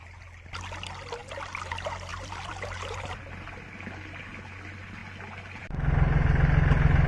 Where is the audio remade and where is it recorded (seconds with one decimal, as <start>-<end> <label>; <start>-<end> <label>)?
0.0-2.1 recorded; 2.1-3.2 remade; 3.2-7.1 recorded